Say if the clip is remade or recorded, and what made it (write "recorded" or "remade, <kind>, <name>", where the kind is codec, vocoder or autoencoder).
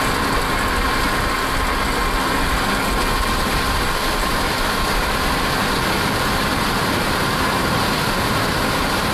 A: recorded